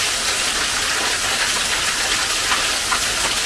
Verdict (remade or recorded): recorded